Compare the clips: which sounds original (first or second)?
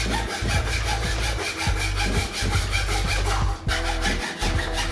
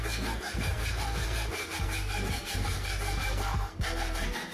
first